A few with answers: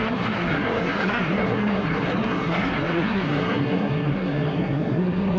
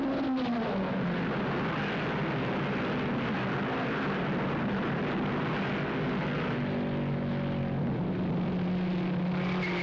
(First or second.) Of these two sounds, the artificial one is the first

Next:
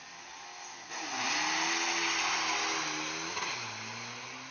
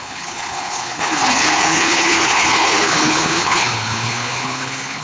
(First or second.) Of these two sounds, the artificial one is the second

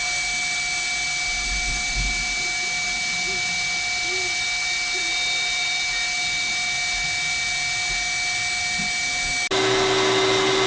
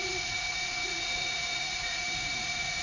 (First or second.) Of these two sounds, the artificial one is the second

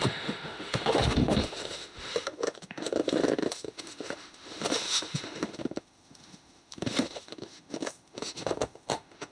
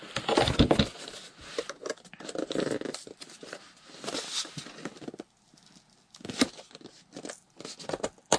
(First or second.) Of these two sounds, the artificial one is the first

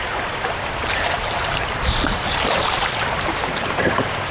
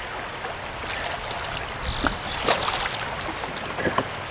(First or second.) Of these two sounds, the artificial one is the first